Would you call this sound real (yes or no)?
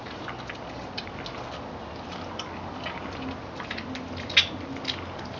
yes